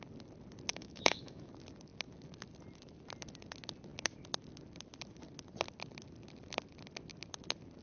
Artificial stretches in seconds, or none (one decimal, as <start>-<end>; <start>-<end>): 0.7-1.5